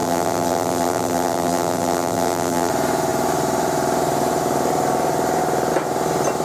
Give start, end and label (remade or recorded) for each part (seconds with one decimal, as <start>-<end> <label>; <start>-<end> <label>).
0.0-2.7 remade; 2.7-6.4 recorded